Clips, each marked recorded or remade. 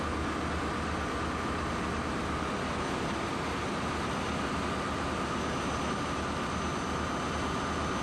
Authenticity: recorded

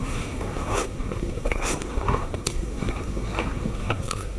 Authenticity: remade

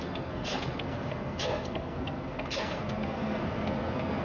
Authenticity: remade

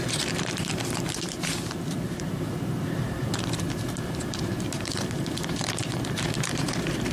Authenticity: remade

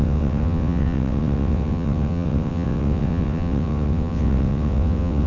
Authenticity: remade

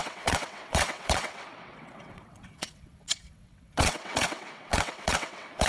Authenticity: remade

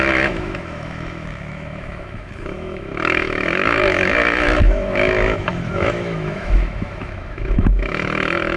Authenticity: remade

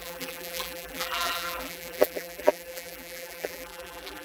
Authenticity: remade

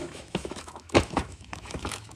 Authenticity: remade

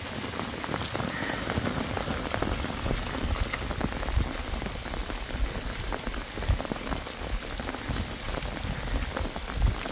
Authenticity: recorded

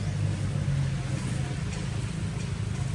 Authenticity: recorded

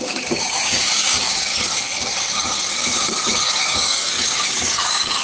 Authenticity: remade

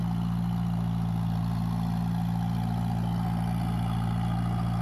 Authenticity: recorded